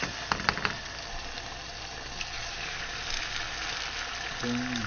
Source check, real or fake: real